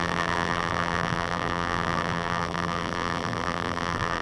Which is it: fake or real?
fake